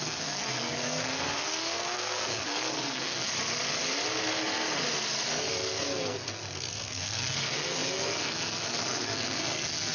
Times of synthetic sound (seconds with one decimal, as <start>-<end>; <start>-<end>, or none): 0.0-3.3; 5.3-9.9